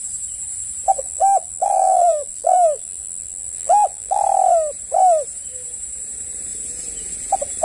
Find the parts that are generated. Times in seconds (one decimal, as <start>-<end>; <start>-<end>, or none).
0.9-4.2